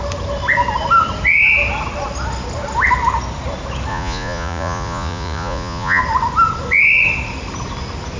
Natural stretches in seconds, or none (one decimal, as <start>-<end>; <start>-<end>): 0.0-3.9; 6.0-8.2